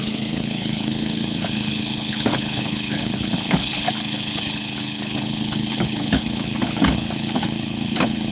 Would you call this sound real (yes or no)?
no